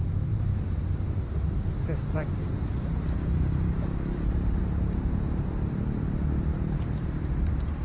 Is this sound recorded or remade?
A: remade